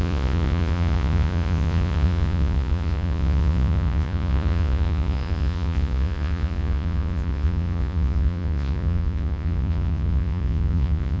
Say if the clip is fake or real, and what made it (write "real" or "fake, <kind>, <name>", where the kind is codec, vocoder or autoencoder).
fake, vocoder, Vocos